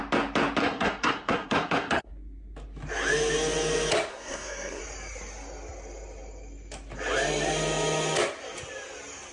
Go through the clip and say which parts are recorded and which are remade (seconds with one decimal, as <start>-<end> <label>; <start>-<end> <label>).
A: 0.0-0.6 recorded; 0.6-2.1 remade; 2.1-4.1 recorded; 4.1-4.8 remade; 4.8-9.3 recorded